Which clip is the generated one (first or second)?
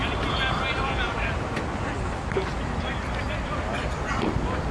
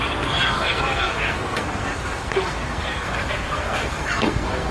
second